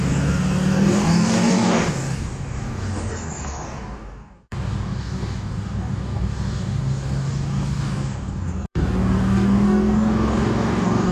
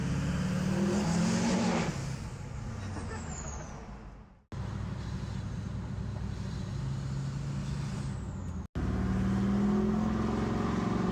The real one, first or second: second